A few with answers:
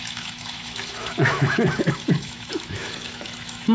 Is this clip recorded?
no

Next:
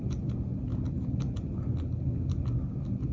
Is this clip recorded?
yes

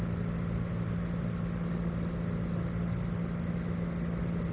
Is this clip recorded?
yes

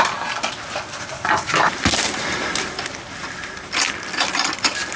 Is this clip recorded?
yes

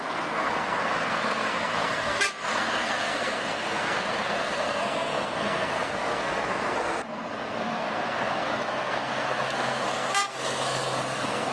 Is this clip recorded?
no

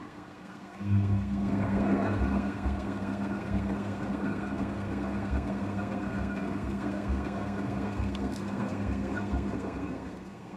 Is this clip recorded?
no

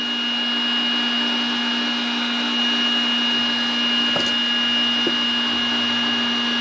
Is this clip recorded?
yes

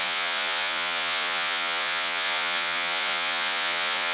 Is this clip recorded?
no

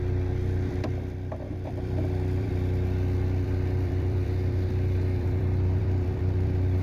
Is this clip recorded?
no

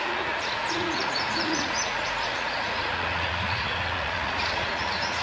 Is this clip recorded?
no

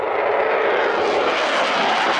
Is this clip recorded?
yes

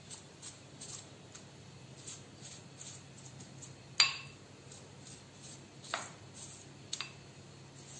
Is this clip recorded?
yes